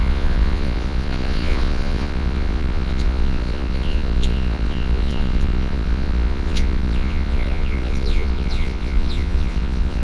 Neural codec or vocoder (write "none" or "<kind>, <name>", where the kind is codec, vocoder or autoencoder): vocoder, Vocos